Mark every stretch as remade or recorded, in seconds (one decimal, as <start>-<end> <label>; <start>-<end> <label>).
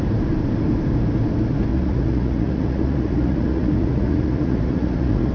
0.0-1.7 recorded; 1.7-5.3 remade